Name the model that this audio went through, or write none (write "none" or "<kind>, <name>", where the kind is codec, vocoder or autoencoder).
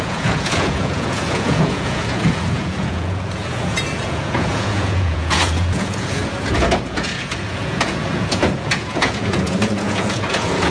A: vocoder, Vocos